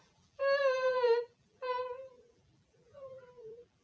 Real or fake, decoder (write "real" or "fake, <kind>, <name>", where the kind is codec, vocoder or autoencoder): fake, vocoder, BigVGAN v2